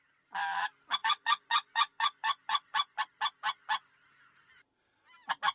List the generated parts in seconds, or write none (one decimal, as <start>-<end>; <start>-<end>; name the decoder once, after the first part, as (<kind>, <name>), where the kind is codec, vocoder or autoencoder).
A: 1.0-3.0 (vocoder, Vocos)

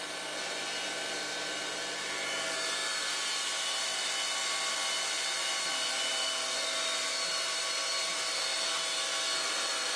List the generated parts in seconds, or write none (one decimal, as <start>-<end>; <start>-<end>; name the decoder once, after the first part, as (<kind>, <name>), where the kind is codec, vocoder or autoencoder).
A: none

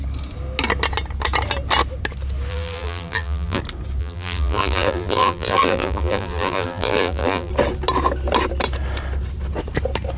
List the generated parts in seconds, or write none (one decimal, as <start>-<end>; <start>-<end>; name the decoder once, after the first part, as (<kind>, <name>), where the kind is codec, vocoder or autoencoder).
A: 2.5-3.6 (vocoder, BigVGAN v2); 4.0-7.5

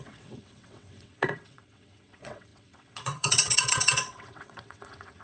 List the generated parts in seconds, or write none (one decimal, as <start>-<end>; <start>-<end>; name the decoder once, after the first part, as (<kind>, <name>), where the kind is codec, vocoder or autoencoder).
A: 0.0-5.2 (vocoder, WaveNeXt)

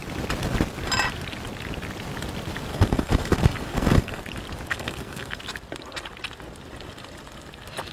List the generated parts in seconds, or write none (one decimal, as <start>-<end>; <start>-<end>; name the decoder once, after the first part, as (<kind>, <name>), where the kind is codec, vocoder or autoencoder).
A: 2.7-4.2 (codec, SNAC); 4.7-5.4

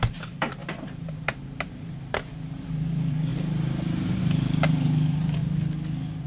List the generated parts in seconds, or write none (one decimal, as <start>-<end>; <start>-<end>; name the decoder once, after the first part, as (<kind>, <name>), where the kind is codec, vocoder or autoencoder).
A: 0.0-5.4 (vocoder, BigVGAN v2)

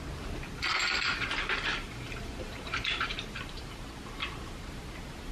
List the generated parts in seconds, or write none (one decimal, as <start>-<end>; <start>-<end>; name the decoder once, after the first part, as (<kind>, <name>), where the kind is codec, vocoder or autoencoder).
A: 1.7-5.3 (vocoder, BigVGAN v2)

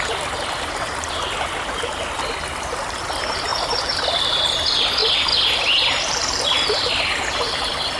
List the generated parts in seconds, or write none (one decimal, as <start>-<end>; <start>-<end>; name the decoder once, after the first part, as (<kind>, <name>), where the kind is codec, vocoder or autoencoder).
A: none